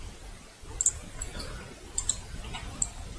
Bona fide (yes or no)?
yes